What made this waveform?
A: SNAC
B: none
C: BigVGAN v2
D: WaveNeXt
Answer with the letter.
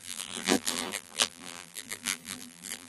C